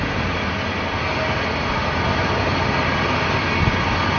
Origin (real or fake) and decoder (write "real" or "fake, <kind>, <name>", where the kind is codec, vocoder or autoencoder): real